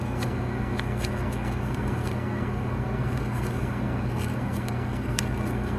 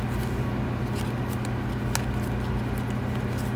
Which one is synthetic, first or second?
first